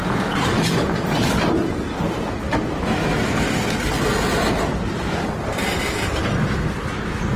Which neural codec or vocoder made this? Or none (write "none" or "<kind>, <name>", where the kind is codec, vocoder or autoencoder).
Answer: none